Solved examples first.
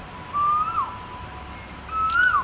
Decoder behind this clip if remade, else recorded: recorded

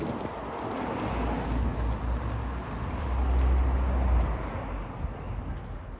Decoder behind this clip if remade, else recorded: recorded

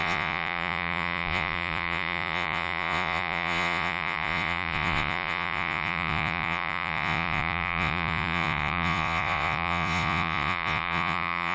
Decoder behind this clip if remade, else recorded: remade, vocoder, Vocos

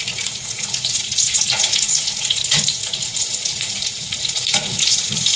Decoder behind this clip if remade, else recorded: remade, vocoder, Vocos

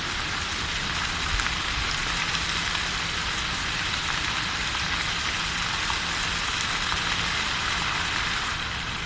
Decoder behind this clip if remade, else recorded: recorded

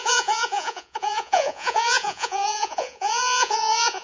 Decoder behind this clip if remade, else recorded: remade, vocoder, Vocos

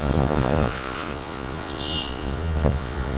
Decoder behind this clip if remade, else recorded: remade, vocoder, Vocos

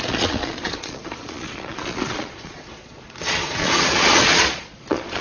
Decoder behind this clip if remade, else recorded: remade, vocoder, Vocos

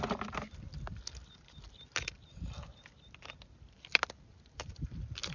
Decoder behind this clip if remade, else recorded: recorded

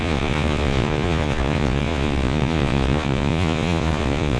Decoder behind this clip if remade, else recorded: remade, vocoder, Vocos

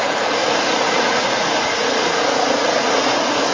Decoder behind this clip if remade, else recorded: remade, vocoder, Vocos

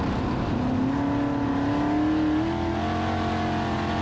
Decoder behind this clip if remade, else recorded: recorded